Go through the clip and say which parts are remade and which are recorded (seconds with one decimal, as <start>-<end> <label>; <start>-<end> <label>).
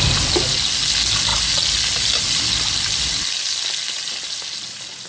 0.0-5.1 recorded